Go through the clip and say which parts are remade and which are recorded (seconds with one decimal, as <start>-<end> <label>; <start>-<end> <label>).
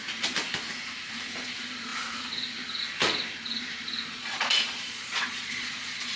0.0-4.2 recorded; 4.2-6.2 remade